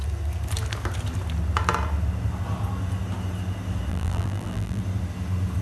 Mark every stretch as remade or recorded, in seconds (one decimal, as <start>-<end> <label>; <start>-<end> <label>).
0.0-3.9 recorded; 3.9-4.8 remade; 4.8-5.6 recorded